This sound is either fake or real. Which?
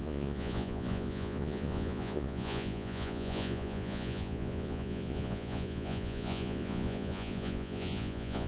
fake